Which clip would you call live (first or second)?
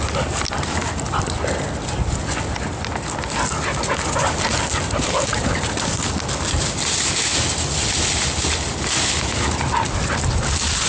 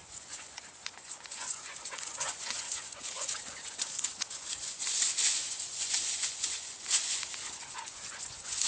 first